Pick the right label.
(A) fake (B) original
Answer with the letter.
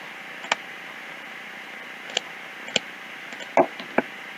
B